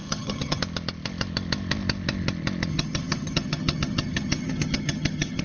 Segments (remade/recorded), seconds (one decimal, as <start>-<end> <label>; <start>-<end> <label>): 0.0-0.6 remade; 0.6-2.7 recorded; 2.7-5.4 remade